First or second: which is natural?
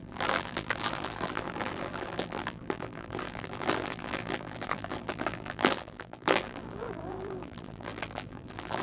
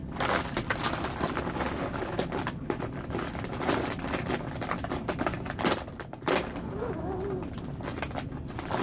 second